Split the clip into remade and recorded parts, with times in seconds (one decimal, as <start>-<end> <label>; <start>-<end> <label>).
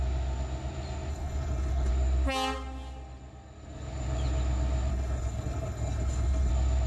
0.0-1.1 recorded; 1.1-1.9 remade; 1.9-4.9 recorded; 4.9-6.5 remade; 6.5-6.9 recorded